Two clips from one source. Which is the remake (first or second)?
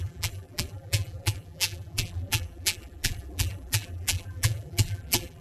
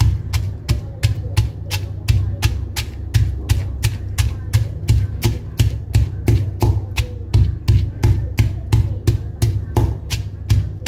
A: first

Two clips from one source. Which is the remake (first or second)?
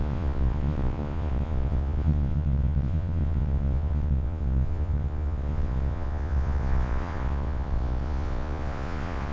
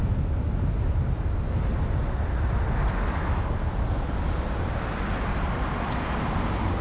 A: first